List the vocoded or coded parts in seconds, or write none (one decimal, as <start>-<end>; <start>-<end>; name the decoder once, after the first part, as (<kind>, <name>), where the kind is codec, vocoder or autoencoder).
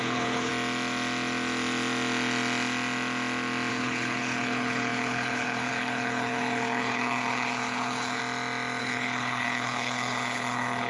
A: 0.0-0.5 (codec, HILCodec); 3.7-8.2; 8.8-10.9